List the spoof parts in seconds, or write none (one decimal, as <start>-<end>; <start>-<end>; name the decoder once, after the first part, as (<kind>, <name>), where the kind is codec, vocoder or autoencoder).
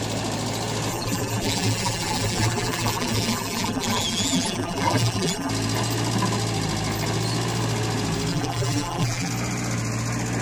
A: 0.9-5.5 (vocoder, BigVGAN v2); 8.3-9.3